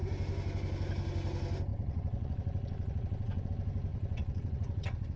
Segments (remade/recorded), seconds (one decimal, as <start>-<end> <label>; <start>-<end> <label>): 0.0-1.7 recorded; 1.7-3.5 remade; 3.5-3.9 recorded; 3.9-5.2 remade